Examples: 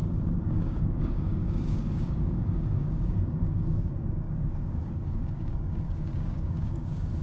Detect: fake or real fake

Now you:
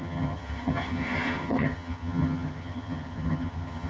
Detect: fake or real fake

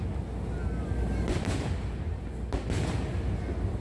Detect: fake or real real